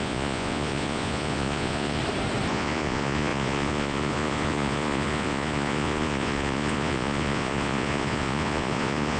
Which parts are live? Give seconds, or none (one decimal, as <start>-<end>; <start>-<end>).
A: 2.0-2.5